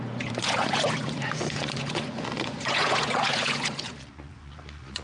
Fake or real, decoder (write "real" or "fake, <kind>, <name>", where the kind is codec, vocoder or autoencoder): fake, vocoder, Vocos